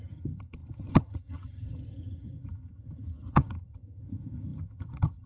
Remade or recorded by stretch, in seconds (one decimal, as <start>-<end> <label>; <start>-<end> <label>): 0.0-5.3 remade